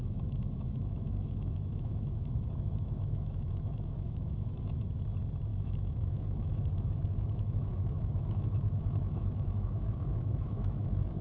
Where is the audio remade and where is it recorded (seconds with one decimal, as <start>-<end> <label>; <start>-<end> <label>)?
0.0-4.8 remade; 4.8-5.5 recorded; 5.5-11.2 remade